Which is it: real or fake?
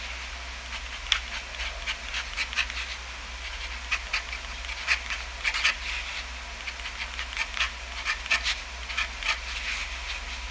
real